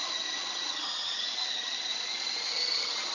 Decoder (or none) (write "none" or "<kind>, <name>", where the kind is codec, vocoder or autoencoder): vocoder, HiFi-GAN